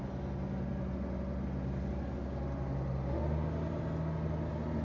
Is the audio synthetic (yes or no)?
no